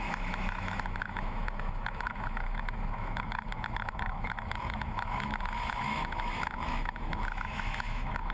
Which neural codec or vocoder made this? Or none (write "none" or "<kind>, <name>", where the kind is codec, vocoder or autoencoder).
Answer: autoencoder, DAC-VAE